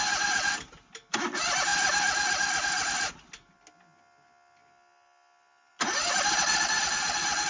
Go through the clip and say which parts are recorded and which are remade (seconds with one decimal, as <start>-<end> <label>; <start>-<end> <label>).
0.0-1.7 recorded; 1.7-3.1 remade; 3.1-5.7 recorded; 5.7-6.3 remade; 6.3-7.5 recorded